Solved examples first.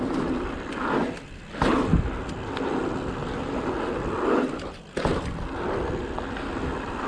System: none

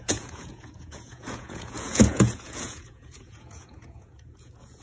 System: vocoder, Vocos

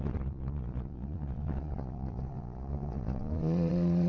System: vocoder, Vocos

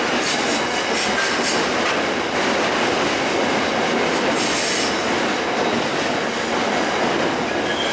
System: none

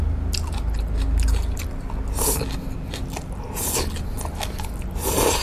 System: none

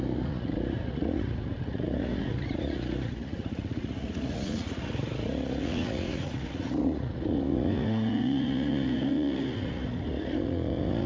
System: vocoder, Vocos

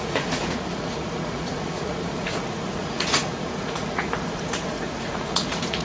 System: vocoder, Vocos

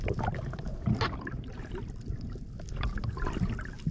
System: none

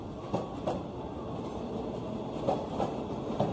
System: none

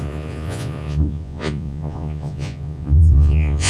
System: vocoder, Vocos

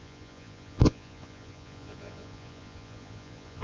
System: vocoder, Vocos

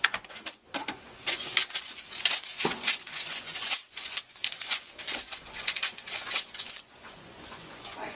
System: vocoder, Vocos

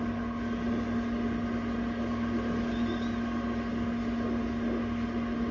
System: none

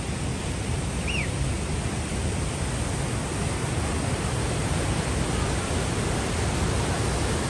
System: none